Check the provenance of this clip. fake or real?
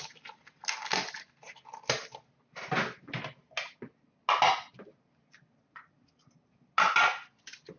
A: real